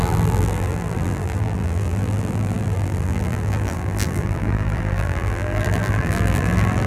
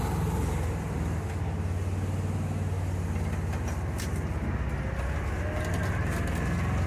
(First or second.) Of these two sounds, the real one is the second